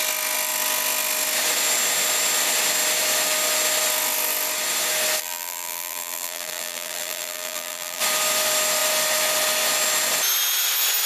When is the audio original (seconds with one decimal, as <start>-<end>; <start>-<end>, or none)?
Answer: 0.0-5.2; 8.0-11.1